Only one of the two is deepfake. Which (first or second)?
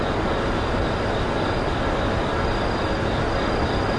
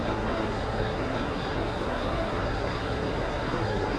second